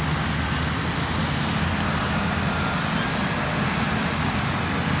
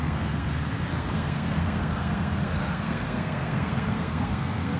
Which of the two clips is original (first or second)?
first